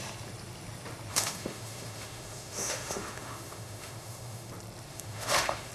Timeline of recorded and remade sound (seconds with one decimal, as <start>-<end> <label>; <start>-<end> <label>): 0.0-1.1 recorded; 1.1-4.5 remade; 4.5-4.9 recorded; 4.9-5.7 remade